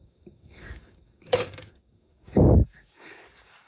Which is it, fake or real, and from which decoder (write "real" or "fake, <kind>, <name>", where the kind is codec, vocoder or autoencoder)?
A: fake, codec, DAC